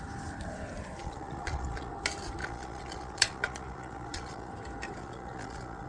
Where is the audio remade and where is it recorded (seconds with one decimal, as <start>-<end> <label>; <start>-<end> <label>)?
0.0-1.0 recorded; 1.0-1.9 remade; 1.9-2.4 recorded; 2.4-4.5 remade; 4.5-5.0 recorded; 5.0-5.9 remade